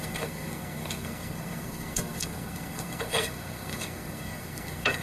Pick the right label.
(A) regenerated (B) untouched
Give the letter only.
A